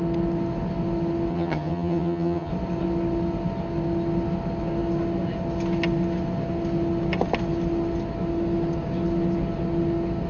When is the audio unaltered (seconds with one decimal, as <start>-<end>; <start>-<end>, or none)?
0.0-1.3; 2.5-10.3